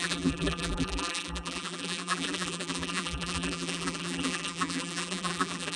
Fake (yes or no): yes